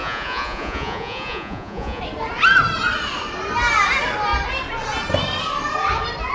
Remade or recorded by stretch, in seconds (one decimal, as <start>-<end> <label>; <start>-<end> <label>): 0.0-2.0 remade; 2.0-6.3 recorded